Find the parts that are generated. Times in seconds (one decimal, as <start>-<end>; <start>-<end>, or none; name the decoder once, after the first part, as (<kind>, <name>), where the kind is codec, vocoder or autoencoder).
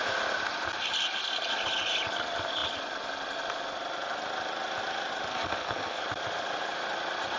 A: 5.3-6.0 (codec, SNAC)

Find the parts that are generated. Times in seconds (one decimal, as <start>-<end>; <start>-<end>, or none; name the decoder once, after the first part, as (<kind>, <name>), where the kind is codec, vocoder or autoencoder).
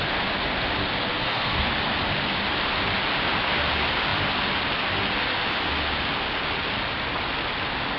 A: 1.1-1.7 (codec, SNAC)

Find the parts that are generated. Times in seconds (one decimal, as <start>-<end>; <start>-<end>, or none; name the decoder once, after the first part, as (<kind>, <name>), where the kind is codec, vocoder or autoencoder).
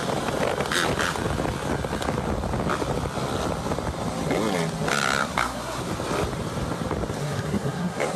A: 5.2-5.8 (codec, SNAC); 7.2-8.2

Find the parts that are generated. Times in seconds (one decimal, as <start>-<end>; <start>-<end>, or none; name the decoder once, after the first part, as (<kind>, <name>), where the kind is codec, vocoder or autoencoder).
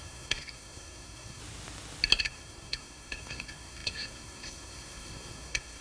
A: 0.0-1.4 (codec, SNAC); 2.2-5.8